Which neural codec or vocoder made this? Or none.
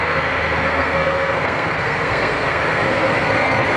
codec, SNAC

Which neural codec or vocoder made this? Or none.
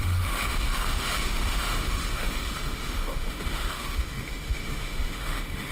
autoencoder, DAC-VAE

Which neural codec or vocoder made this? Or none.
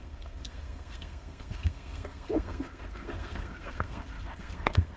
codec, SNAC